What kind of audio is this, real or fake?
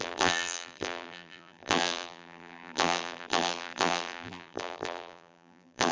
fake